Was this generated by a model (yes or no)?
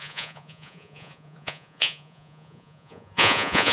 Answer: yes